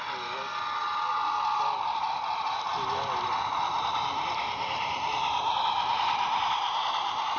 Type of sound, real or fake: real